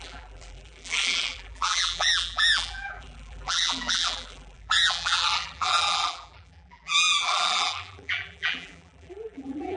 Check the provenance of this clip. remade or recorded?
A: remade